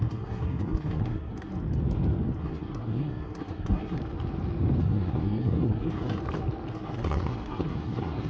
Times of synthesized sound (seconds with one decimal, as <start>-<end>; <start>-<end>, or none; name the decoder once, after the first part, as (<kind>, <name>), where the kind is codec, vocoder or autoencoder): 0.0-1.5 (codec, SNAC); 2.4-4.0; 4.8-6.2; 6.7-8.3